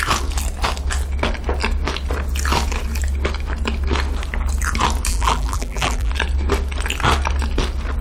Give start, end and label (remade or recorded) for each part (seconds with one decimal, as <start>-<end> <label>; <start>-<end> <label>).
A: 0.0-5.1 recorded; 5.1-6.1 remade; 6.1-8.0 recorded